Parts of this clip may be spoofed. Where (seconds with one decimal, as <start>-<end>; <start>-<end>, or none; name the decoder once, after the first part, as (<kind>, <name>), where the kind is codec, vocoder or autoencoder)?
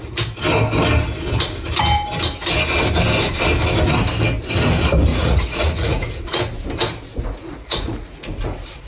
5.1-6.4 (vocoder, Vocos); 7.1-8.9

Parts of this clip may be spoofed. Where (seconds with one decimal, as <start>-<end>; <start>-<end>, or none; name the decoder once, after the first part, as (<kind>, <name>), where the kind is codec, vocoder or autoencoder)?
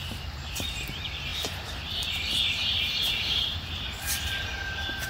0.0-5.1 (vocoder, BigVGAN v2)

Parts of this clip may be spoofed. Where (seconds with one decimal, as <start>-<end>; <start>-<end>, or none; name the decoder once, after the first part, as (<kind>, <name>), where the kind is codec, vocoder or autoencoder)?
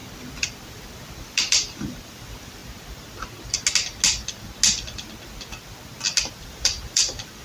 1.2-2.6 (vocoder, BigVGAN v2); 6.3-7.4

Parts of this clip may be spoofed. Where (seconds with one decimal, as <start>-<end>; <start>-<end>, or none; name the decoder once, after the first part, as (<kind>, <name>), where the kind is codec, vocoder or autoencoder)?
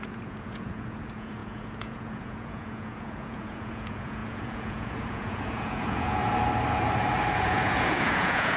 0.0-6.2 (vocoder, Vocos); 7.3-8.6